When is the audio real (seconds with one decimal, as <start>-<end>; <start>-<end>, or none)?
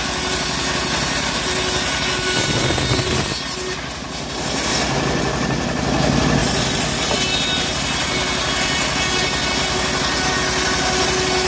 0.0-11.5